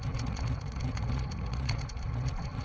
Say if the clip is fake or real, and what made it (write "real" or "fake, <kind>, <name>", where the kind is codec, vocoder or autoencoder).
fake, vocoder, Vocos